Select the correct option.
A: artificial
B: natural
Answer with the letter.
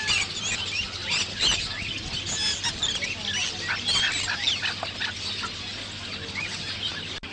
B